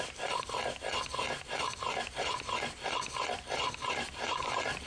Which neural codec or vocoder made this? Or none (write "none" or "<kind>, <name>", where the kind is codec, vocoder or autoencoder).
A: none